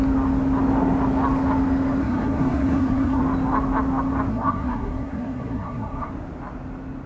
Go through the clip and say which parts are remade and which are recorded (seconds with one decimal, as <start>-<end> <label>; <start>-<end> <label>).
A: 0.0-2.0 recorded; 2.0-3.2 remade; 3.2-4.3 recorded; 4.3-6.1 remade; 6.1-7.1 recorded